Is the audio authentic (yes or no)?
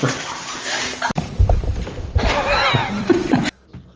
no